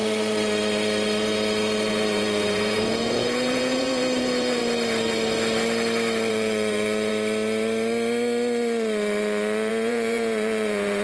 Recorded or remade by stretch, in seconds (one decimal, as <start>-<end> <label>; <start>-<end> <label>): 0.0-1.9 recorded; 1.9-4.6 remade; 4.6-6.3 recorded; 6.3-7.1 remade; 7.1-9.7 recorded; 9.7-11.0 remade